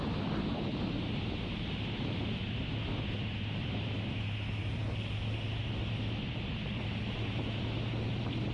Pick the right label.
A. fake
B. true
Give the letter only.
B